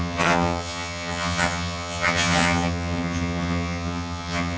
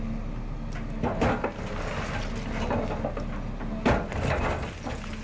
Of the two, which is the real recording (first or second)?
second